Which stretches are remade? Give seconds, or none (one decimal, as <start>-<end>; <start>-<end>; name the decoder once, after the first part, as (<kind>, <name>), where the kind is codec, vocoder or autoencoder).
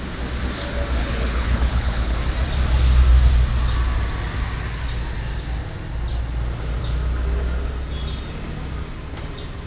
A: 1.0-2.2 (codec, HILCodec)